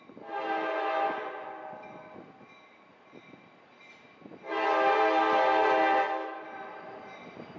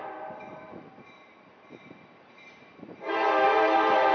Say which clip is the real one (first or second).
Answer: first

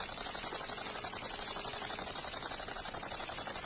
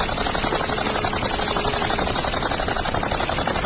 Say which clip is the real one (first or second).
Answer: second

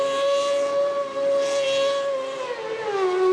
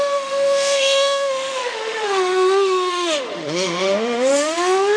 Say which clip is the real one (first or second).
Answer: first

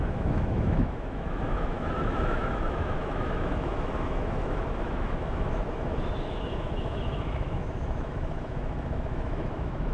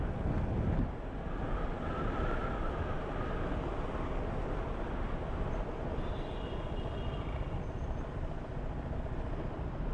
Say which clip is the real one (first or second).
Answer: second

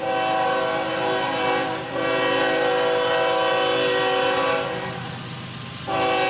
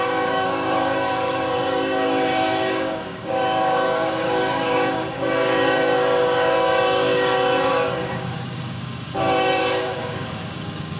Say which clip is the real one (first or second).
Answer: first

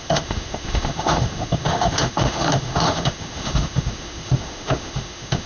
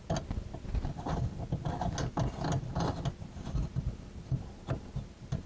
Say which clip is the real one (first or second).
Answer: second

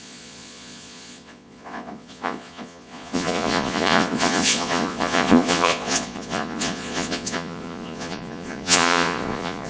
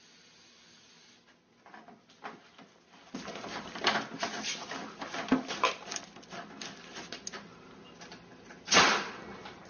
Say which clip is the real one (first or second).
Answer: second